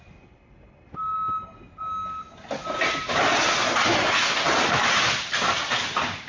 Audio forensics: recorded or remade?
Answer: recorded